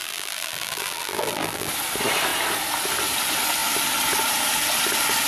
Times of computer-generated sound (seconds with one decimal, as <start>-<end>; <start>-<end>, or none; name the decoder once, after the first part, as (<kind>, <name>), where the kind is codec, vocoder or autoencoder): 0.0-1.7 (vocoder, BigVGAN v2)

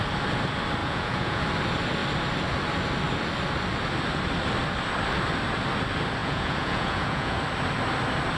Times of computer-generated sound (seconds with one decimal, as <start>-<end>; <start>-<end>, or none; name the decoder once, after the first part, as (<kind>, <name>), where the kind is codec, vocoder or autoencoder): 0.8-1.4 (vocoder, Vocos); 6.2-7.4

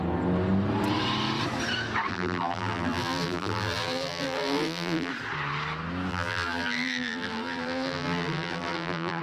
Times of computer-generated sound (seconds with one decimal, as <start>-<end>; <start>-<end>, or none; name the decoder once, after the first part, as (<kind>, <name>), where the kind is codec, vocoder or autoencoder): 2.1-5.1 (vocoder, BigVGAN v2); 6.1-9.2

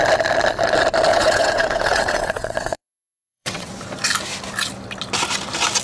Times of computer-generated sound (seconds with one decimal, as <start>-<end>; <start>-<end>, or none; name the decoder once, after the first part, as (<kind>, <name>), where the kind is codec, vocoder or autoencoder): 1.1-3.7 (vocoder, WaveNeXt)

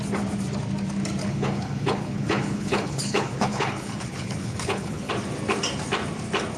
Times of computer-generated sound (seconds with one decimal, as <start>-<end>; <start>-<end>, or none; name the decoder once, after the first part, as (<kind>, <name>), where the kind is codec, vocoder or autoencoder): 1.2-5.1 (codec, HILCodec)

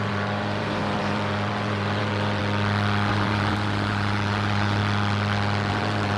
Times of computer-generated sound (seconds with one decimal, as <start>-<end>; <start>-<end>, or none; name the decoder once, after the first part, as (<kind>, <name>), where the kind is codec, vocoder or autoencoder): 0.0-2.4 (vocoder, BigVGAN v2); 3.1-4.8; 5.7-6.2